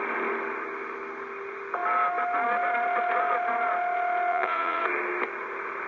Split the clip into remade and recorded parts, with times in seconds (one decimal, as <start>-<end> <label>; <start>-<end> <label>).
0.0-4.3 recorded; 4.3-4.8 remade; 4.8-5.9 recorded